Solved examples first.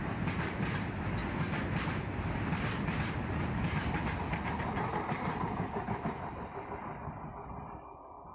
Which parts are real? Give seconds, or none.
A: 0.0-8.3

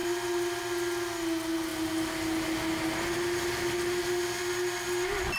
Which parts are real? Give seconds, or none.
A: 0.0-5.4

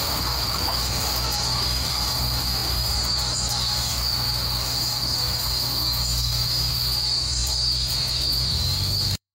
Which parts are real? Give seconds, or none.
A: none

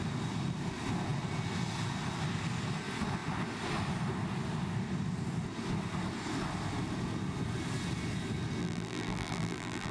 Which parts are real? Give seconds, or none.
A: 0.0-8.6

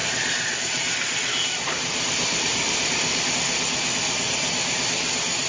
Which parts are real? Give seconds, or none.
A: 3.3-5.5

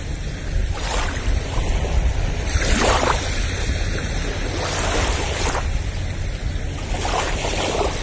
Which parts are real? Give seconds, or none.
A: 0.0-0.6; 4.2-8.0

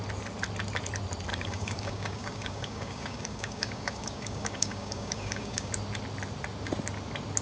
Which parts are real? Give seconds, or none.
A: 0.0-1.3; 5.7-7.4

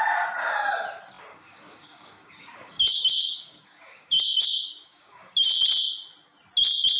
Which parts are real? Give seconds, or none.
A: 0.0-1.3; 5.5-7.0